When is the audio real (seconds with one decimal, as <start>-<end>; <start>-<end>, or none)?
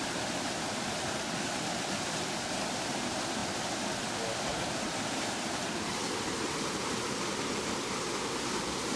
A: 0.0-9.0